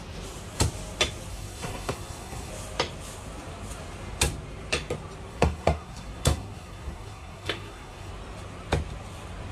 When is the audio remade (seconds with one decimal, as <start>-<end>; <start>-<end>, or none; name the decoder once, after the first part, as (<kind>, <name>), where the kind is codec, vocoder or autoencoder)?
1.3-2.5 (codec, SNAC); 5.3-8.1